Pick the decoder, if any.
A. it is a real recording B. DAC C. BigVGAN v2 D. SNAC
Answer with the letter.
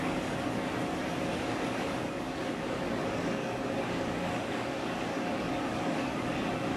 B